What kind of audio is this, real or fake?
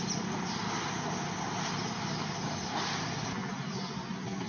real